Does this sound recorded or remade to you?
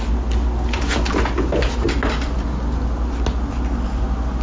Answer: recorded